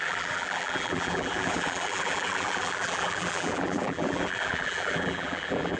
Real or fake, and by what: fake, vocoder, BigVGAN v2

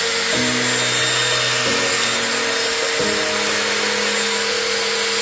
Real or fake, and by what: real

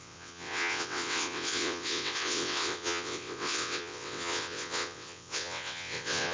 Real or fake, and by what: fake, vocoder, WaveNeXt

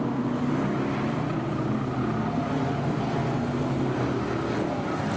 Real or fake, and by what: real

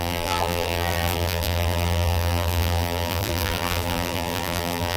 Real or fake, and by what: fake, vocoder, BigVGAN v2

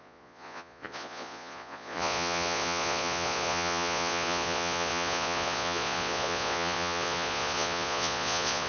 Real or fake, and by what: fake, vocoder, Vocos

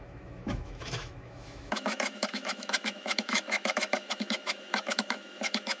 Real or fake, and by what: fake, autoencoder, DAC-VAE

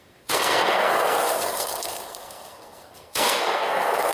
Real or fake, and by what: fake, codec, SNAC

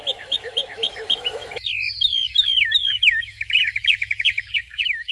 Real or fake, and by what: fake, autoencoder, DAC-VAE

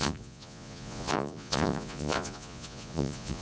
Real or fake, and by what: fake, vocoder, Vocos